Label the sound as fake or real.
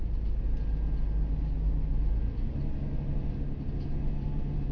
real